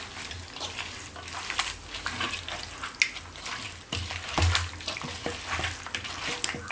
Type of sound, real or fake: real